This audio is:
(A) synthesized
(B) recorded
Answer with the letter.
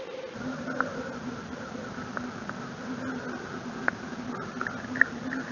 B